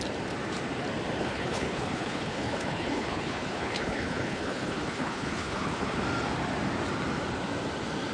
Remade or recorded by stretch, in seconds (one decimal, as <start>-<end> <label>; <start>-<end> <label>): 0.0-1.2 recorded; 1.2-6.0 remade; 6.0-8.1 recorded